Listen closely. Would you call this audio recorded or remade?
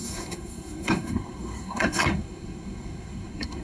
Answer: remade